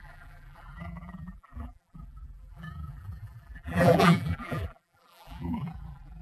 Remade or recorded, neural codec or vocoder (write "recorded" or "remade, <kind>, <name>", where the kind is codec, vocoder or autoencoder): remade, vocoder, BigVGAN v2